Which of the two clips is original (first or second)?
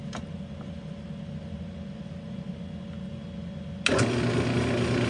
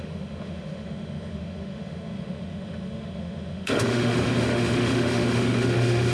first